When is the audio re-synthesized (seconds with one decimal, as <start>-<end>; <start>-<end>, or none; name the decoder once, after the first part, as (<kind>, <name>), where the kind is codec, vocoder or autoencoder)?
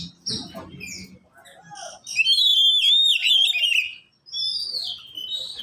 none